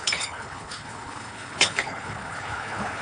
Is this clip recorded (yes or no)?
no